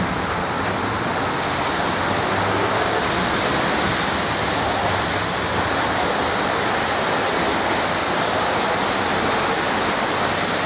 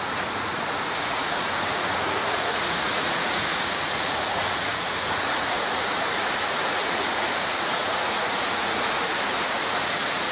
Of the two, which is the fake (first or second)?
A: second